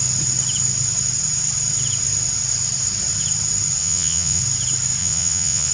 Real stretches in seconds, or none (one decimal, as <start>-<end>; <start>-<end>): 0.0-3.8; 4.4-5.0